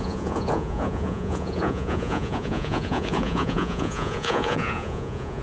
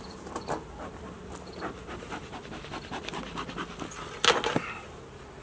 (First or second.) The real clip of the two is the second